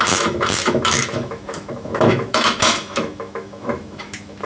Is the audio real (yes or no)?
no